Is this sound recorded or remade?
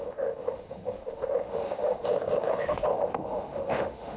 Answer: remade